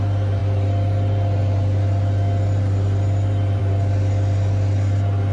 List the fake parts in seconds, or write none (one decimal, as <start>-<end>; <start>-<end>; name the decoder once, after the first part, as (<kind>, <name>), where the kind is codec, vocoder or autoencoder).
none